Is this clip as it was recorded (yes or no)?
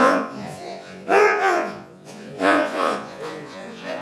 no